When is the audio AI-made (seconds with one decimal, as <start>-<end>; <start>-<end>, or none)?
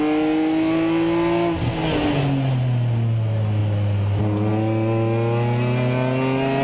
3.6-4.5